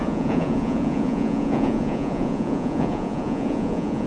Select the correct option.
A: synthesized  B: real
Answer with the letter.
A